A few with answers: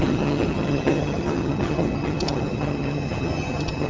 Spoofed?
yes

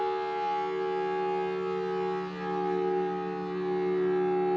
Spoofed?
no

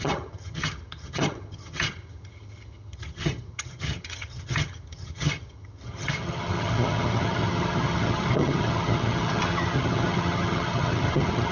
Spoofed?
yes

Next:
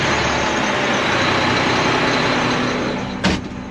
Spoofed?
no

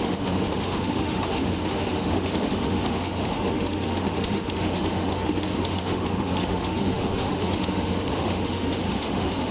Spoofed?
yes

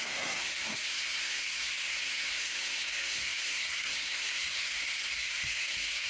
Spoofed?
yes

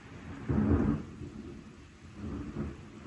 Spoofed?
no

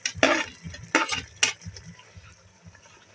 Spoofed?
no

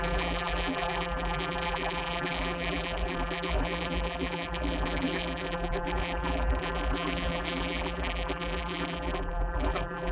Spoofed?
yes